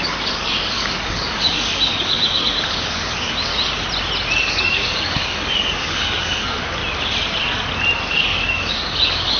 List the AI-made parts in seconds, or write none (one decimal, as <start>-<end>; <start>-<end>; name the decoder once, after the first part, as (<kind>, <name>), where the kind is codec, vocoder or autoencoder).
0.0-3.5 (codec, DAC); 4.4-6.8; 8.1-9.4